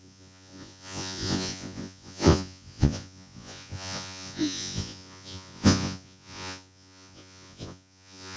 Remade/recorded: remade